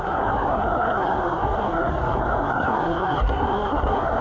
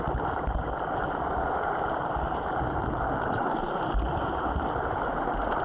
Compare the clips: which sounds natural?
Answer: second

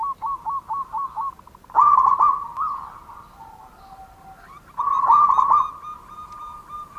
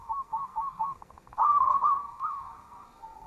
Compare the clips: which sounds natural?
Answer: first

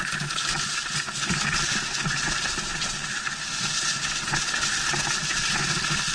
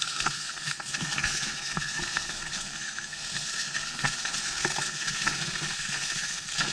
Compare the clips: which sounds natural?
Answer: first